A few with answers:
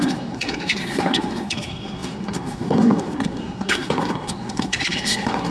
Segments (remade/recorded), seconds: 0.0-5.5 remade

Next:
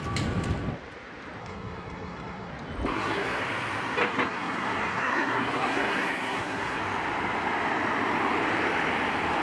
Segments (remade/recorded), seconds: 0.0-1.4 recorded; 1.4-2.5 remade; 2.5-2.9 recorded; 2.9-3.4 remade; 3.4-4.0 recorded; 4.0-6.8 remade; 6.8-9.4 recorded

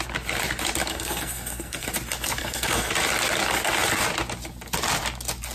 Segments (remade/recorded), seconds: 0.0-0.8 recorded; 0.8-1.9 remade; 1.9-2.4 recorded; 2.4-2.9 remade; 2.9-5.5 recorded

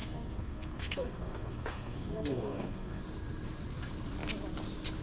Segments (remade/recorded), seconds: 0.0-3.0 remade; 3.0-5.0 recorded

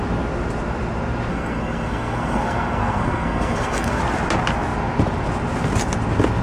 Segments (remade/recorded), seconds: 0.0-1.3 recorded; 1.3-4.0 remade; 4.0-6.4 recorded

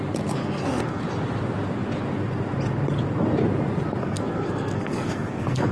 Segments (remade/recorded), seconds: 0.0-0.4 recorded; 0.4-1.0 remade; 1.0-4.0 recorded; 4.0-5.7 remade

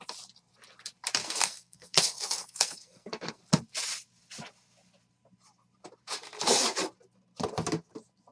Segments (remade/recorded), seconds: 0.0-1.2 recorded; 1.2-3.4 remade; 3.4-8.3 recorded